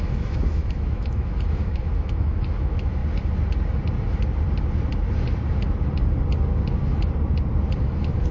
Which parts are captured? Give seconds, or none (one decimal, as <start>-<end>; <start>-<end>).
3.0-7.8